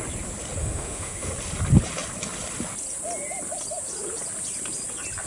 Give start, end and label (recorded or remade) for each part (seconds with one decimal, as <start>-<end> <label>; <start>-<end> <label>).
0.0-0.6 recorded; 0.6-1.3 remade; 1.3-5.3 recorded